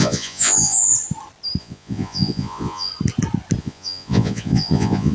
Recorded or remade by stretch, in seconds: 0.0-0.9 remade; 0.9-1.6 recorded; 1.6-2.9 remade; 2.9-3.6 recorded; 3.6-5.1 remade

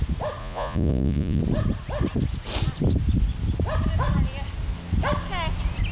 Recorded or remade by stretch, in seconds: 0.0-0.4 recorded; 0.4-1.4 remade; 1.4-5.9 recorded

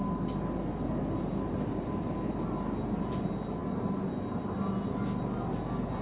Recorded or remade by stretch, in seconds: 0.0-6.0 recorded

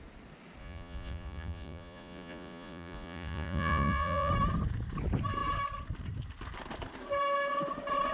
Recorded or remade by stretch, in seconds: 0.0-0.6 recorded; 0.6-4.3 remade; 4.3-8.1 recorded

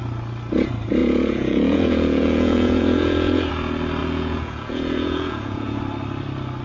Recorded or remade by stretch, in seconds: 0.0-1.0 recorded; 1.0-3.5 remade; 3.5-4.0 recorded; 4.0-5.8 remade; 5.8-6.6 recorded

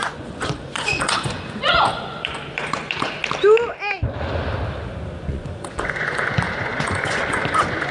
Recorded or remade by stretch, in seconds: 0.0-3.2 remade; 3.2-5.2 recorded; 5.2-7.9 remade

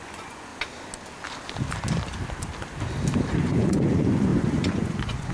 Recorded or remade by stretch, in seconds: 0.0-0.5 remade; 0.5-3.3 recorded; 3.3-5.3 remade

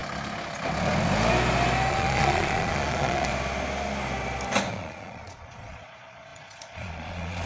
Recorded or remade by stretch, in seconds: 0.0-1.9 recorded; 1.9-3.3 remade; 3.3-4.7 recorded; 4.7-7.5 remade